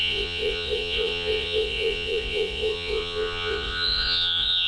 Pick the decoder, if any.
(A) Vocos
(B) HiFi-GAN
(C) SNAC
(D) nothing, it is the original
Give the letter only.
A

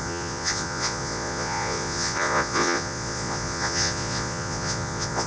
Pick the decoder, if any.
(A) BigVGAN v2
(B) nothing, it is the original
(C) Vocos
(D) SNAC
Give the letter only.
C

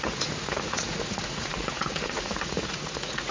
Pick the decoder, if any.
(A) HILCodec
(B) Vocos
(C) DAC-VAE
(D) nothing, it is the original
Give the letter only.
B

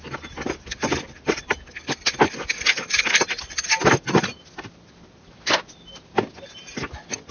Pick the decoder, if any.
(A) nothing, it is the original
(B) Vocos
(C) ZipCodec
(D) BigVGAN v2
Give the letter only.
A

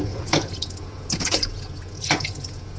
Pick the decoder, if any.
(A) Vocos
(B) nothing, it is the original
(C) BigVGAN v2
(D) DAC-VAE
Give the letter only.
A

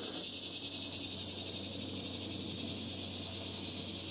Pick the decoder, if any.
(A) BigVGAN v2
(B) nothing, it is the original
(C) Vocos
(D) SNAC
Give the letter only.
B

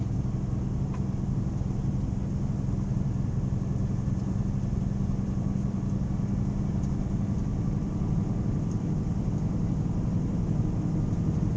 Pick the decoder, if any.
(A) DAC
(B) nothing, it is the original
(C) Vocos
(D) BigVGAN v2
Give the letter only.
B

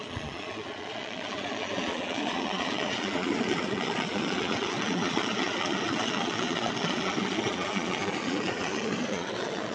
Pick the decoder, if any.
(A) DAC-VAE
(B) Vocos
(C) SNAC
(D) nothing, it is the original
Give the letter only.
B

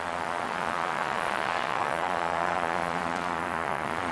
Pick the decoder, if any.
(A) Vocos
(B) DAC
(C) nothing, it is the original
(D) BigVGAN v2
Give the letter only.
A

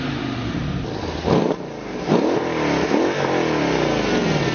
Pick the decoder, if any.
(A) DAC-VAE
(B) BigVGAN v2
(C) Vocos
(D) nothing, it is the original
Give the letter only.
D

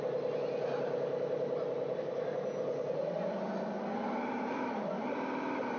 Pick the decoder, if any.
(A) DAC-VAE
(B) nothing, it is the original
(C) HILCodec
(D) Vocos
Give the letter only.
B